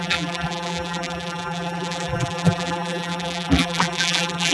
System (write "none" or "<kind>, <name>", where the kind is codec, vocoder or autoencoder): vocoder, BigVGAN v2